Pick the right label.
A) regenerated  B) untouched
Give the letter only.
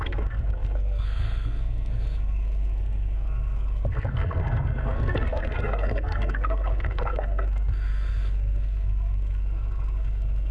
A